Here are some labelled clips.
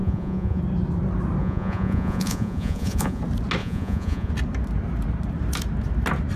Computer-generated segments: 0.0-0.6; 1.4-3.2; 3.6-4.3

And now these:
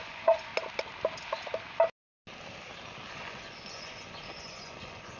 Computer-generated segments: 0.0-0.5; 3.1-5.2